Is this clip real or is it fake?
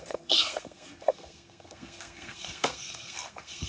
fake